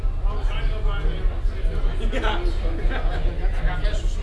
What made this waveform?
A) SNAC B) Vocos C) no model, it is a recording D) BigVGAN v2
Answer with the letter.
C